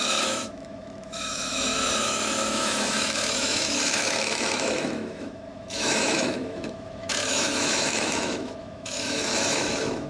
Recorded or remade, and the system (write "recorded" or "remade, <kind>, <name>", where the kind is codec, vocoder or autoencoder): remade, autoencoder, DAC-VAE